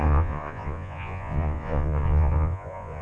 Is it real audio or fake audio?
fake